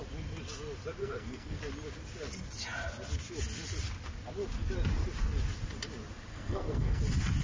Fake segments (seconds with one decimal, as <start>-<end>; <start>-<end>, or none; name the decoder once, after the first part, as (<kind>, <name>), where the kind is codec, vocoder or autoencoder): 1.0-1.6 (codec, SNAC); 6.3-7.0